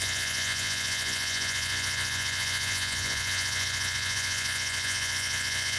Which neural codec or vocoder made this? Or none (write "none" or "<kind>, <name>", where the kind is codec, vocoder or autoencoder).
vocoder, Vocos